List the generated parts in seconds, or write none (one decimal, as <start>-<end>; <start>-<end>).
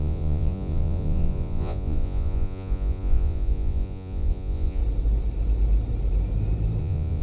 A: 0.0-4.8; 6.8-7.2